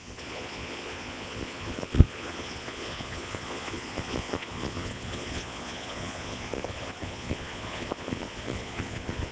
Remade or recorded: remade